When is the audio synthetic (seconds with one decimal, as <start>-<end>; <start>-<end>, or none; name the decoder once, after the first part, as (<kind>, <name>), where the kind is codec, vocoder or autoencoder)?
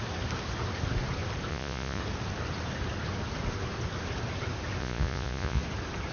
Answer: 1.5-2.0 (vocoder, Vocos); 4.8-5.6